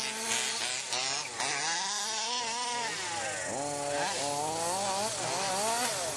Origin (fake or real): real